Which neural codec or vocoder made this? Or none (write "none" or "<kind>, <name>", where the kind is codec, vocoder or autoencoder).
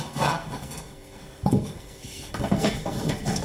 codec, SNAC